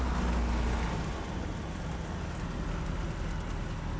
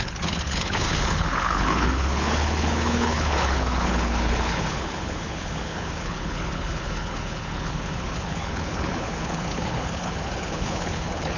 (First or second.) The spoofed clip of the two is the second